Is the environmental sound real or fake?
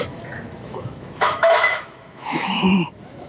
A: fake